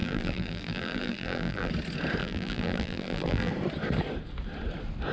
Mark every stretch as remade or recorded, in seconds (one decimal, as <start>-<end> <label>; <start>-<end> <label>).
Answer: 0.0-1.7 remade; 1.7-2.2 recorded; 2.2-3.5 remade; 3.5-5.1 recorded